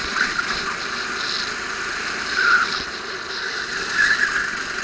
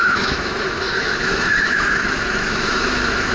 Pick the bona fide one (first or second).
first